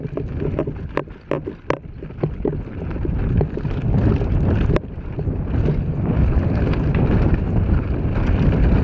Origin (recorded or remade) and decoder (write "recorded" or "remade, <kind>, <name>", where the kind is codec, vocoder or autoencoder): recorded